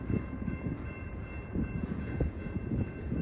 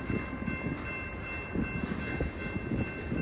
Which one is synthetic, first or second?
first